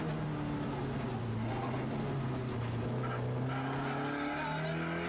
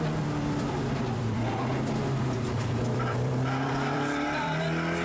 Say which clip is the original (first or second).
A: first